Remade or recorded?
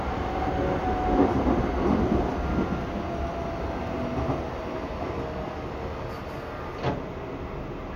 recorded